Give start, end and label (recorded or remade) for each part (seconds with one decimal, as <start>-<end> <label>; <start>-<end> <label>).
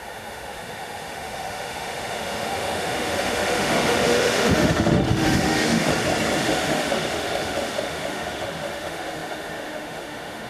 0.0-5.9 remade; 5.9-6.4 recorded; 6.4-10.5 remade